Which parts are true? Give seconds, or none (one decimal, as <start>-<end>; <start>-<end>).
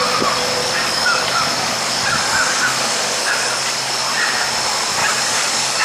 0.0-0.6; 4.1-5.0